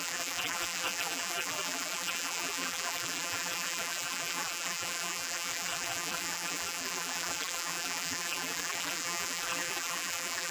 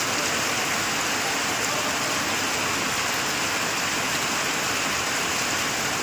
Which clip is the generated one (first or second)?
first